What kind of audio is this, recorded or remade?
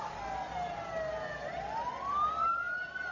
recorded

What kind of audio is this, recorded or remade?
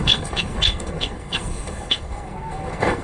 remade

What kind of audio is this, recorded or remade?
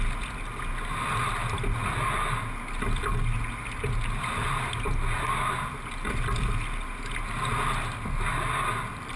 recorded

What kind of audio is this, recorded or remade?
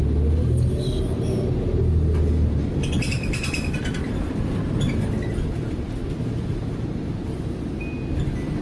recorded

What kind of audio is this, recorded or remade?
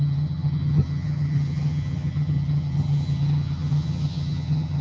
remade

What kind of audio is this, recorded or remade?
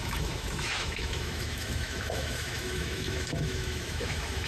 remade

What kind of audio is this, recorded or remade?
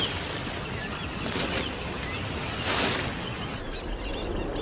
recorded